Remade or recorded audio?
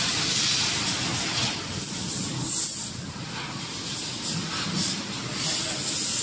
recorded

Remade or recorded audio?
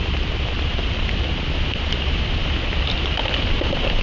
recorded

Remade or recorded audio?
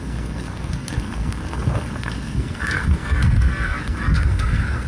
remade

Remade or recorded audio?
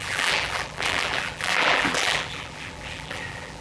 remade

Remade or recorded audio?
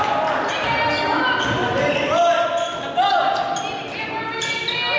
recorded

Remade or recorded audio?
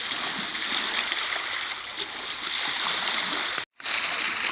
recorded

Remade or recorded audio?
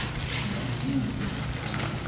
recorded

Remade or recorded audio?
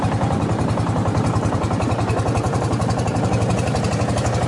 remade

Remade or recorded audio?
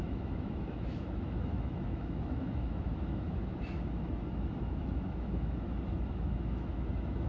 remade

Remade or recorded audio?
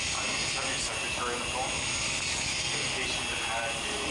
recorded